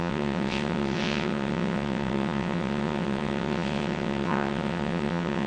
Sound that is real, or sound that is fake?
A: fake